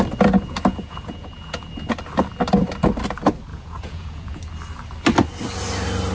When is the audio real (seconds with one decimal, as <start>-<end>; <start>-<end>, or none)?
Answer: 0.0-0.7; 1.7-3.5; 4.4-6.1